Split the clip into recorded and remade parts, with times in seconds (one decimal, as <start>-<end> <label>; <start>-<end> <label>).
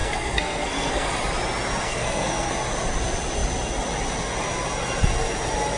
0.0-1.1 remade; 1.1-1.8 recorded; 1.8-2.5 remade; 2.5-5.8 recorded